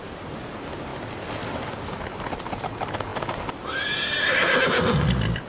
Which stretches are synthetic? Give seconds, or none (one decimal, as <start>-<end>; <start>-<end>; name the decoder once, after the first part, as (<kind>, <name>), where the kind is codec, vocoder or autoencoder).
none